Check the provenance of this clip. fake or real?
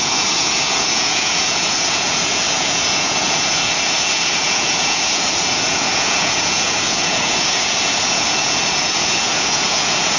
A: fake